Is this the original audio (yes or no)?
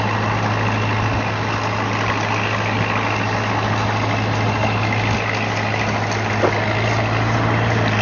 yes